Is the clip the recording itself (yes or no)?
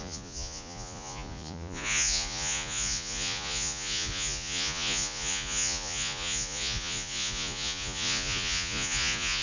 no